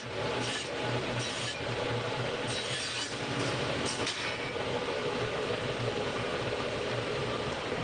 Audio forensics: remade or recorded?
remade